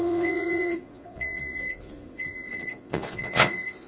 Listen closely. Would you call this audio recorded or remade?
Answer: remade